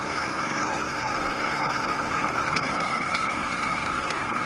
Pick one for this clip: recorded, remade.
remade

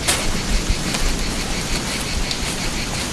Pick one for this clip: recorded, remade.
recorded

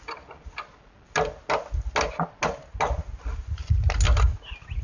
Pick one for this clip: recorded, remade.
recorded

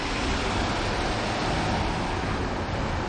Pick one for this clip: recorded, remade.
recorded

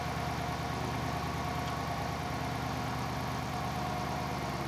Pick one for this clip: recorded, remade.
recorded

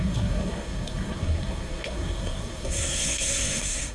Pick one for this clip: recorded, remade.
remade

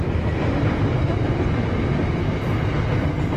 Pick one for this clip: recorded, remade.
recorded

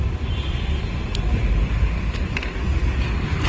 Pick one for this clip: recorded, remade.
recorded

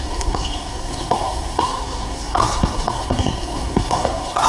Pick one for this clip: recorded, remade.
remade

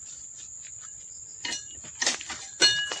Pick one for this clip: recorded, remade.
recorded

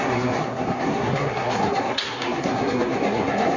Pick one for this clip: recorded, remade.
remade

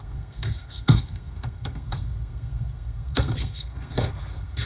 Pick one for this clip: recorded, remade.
remade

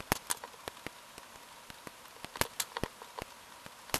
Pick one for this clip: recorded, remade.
recorded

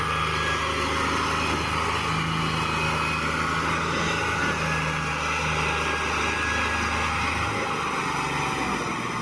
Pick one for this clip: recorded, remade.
recorded